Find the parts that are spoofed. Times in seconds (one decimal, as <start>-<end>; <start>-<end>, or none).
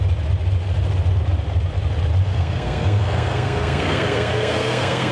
2.3-5.1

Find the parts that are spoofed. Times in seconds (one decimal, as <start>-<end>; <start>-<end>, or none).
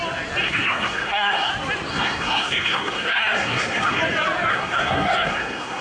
0.4-1.5; 1.9-4.0; 4.5-5.8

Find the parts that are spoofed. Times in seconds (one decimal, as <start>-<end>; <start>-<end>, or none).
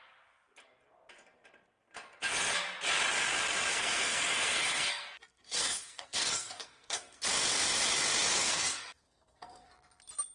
3.7-7.2; 8.4-9.7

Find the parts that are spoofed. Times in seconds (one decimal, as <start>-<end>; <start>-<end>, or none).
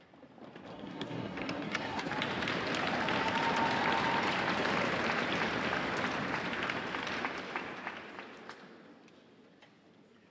0.7-2.1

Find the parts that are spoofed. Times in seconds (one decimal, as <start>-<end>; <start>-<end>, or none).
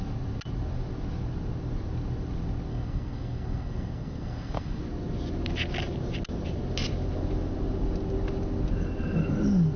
2.7-4.8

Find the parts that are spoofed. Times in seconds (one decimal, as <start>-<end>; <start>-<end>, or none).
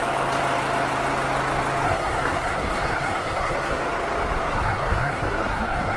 1.8-3.8; 4.4-6.0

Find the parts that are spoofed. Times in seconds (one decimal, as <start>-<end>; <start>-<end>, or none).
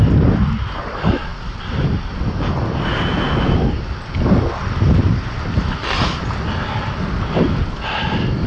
none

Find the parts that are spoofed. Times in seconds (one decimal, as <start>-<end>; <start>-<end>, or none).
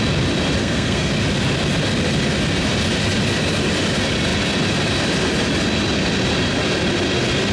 0.6-1.1